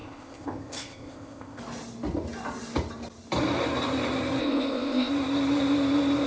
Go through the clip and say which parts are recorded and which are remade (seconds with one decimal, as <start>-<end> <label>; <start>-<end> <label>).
0.0-1.6 remade; 1.6-4.4 recorded; 4.4-5.1 remade; 5.1-6.3 recorded